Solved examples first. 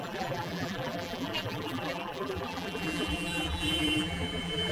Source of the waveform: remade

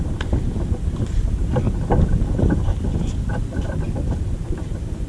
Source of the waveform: recorded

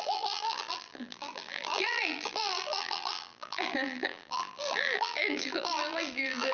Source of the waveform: remade